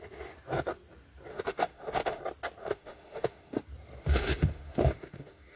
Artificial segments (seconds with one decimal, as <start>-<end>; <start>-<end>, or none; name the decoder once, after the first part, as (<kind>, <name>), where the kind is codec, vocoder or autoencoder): 1.3-2.2 (autoencoder, DAC-VAE); 2.6-3.6; 4.0-5.6